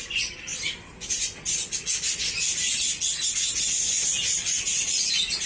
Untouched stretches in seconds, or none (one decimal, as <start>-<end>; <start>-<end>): 0.0-4.2; 4.9-5.5